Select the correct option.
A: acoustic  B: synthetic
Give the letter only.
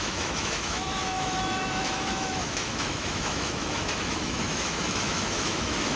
B